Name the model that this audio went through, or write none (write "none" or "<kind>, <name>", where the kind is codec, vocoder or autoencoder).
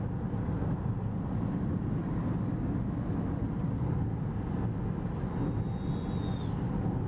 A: none